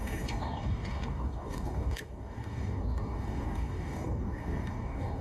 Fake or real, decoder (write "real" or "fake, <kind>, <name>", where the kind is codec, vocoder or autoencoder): fake, codec, DAC